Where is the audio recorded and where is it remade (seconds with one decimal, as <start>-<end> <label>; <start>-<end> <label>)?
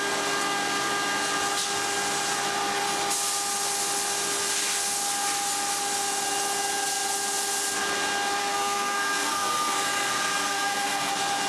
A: 0.0-8.4 recorded; 8.4-11.1 remade; 11.1-11.5 recorded